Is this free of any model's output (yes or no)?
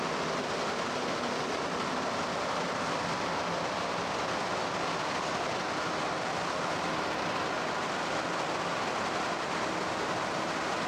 yes